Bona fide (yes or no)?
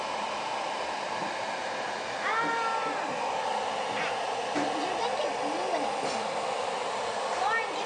yes